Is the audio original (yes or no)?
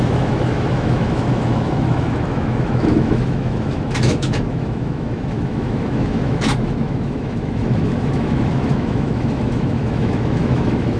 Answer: no